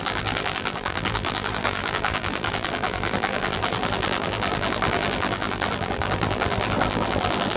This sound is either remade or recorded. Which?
remade